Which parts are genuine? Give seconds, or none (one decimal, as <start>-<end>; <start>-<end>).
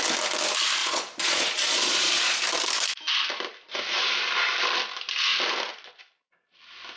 0.0-0.8; 2.4-7.0